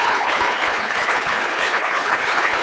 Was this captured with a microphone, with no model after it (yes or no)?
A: no